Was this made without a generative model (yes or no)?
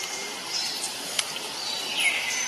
yes